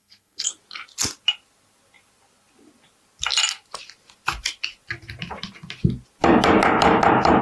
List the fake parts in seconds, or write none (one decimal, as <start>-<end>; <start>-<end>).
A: 0.0-0.5